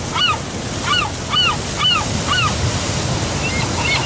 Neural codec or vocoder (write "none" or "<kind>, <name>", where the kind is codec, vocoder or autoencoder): none